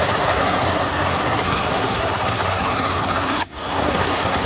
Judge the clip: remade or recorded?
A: remade